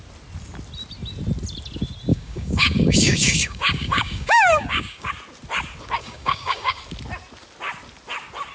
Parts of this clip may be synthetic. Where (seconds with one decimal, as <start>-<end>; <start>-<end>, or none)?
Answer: 2.1-5.1; 6.0-6.8